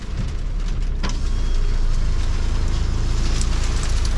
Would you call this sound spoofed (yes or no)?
no